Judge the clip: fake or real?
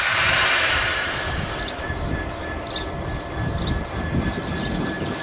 fake